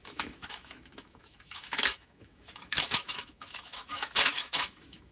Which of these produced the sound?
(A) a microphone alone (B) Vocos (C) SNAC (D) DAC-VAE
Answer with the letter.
D